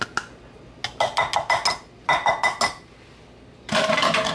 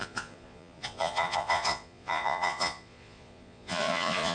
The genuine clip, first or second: first